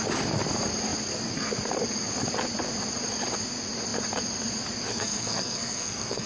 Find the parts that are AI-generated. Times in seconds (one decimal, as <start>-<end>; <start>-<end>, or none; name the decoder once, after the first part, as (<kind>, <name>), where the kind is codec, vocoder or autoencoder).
4.9-6.3 (codec, SNAC)